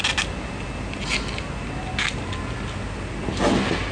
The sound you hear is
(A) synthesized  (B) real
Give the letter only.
B